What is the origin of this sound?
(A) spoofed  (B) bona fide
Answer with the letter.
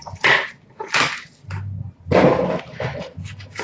B